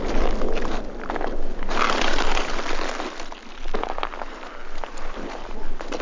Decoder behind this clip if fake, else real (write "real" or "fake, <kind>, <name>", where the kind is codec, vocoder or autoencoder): real